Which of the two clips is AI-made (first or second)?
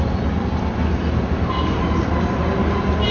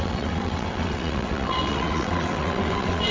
second